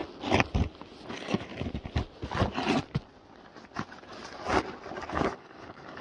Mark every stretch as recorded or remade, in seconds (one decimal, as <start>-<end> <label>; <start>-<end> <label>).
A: 0.0-1.1 recorded; 1.1-1.5 remade; 1.5-5.1 recorded; 5.1-6.0 remade